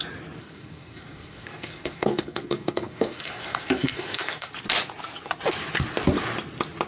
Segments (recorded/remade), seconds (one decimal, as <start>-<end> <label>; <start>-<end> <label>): 0.0-0.4 recorded; 0.4-4.5 remade; 4.5-6.9 recorded